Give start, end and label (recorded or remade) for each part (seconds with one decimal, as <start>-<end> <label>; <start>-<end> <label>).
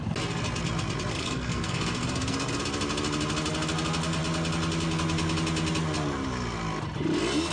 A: 0.0-1.1 recorded; 1.1-2.6 remade; 2.6-7.5 recorded